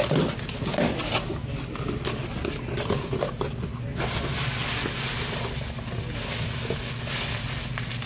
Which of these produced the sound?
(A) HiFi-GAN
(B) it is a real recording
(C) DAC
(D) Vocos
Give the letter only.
B